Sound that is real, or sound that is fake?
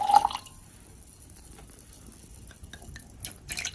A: real